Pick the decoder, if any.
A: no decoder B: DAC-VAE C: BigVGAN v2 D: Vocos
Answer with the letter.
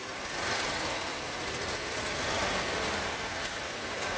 A